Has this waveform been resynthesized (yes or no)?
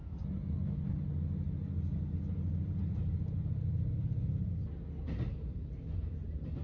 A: no